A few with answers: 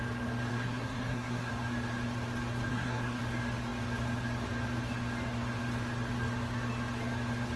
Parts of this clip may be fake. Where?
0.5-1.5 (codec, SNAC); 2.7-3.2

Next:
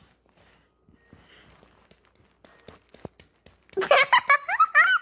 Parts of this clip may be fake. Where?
none

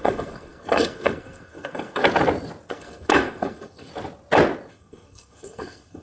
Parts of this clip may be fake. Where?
0.0-2.0 (codec, SNAC); 2.7-3.9; 4.7-6.0

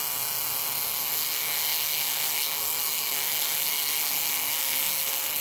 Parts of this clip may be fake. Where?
1.1-5.4 (codec, SNAC)

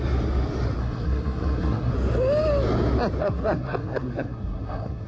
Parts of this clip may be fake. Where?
0.8-1.9 (codec, SNAC); 3.2-5.1